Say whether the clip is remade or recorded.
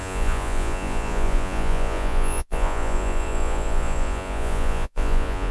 remade